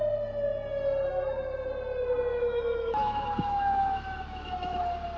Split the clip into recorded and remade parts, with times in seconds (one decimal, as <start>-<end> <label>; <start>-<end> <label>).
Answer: 0.0-2.3 recorded; 2.3-4.8 remade; 4.8-5.2 recorded